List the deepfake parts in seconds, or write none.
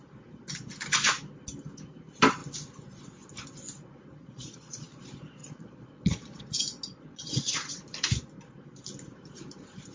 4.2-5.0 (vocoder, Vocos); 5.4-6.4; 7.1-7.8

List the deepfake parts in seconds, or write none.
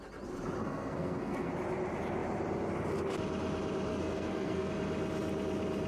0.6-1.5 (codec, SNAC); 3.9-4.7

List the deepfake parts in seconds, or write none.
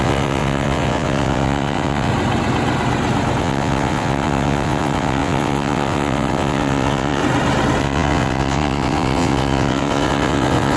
0.0-2.1 (vocoder, WaveNeXt); 3.4-7.2; 7.8-10.8